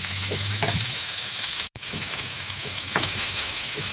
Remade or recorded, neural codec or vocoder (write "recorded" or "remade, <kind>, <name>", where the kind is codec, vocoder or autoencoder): remade, autoencoder, DAC-VAE